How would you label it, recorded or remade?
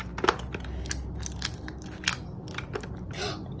recorded